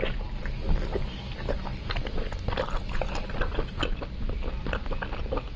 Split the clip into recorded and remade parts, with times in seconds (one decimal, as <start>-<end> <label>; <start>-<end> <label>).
0.0-5.6 recorded